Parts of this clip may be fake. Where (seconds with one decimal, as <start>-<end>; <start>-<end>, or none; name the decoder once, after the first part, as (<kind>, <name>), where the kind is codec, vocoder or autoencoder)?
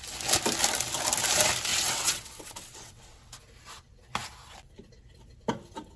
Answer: 1.7-3.3 (vocoder, WaveNeXt)